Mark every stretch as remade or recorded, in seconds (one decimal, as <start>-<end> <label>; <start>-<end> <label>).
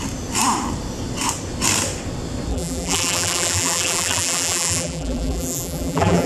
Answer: 0.0-2.5 recorded; 2.5-6.3 remade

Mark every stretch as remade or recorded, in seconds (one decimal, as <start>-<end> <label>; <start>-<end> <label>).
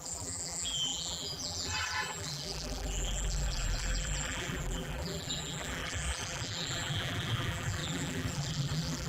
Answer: 0.0-9.1 remade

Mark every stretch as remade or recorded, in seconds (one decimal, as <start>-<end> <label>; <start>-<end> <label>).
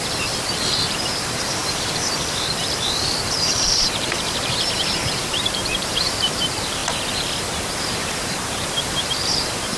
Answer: 0.0-6.8 remade; 6.8-7.8 recorded; 7.8-9.8 remade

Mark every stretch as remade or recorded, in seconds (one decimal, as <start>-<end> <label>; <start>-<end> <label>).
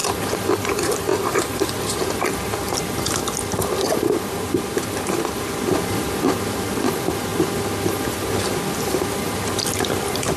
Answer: 0.0-0.5 recorded; 0.5-7.3 remade; 7.3-8.7 recorded; 8.7-10.4 remade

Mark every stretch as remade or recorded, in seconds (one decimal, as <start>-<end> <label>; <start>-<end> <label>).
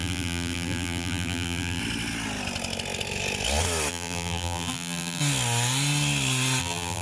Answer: 0.0-1.8 remade; 1.8-3.9 recorded; 3.9-5.2 remade; 5.2-6.6 recorded; 6.6-7.0 remade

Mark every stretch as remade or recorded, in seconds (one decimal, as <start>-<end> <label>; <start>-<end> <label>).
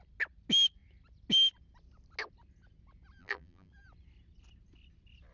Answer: 0.0-3.2 recorded; 3.2-3.7 remade; 3.7-5.3 recorded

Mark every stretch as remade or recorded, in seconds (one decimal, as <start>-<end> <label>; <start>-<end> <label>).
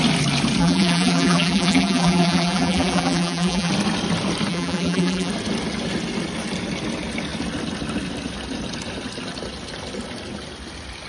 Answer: 0.0-0.6 recorded; 0.6-3.7 remade; 3.7-4.5 recorded; 4.5-5.3 remade; 5.3-11.1 recorded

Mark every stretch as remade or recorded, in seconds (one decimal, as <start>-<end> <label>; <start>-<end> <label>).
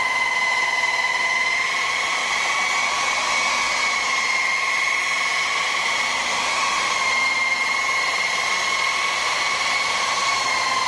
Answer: 0.0-2.2 remade; 2.2-2.9 recorded; 2.9-10.9 remade